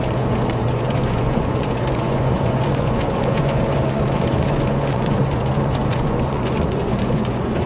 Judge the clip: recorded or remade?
remade